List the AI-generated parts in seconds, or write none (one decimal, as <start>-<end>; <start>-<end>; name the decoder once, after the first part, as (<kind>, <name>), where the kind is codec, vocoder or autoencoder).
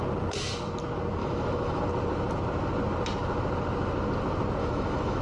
1.2-1.8 (autoencoder, DAC-VAE); 4.6-5.2